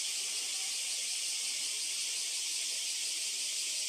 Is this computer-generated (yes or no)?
no